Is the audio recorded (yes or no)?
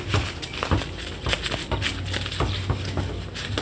yes